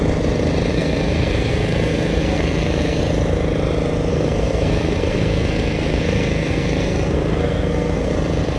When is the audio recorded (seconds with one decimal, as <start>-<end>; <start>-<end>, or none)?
0.0-0.7; 3.0-4.1; 8.1-8.6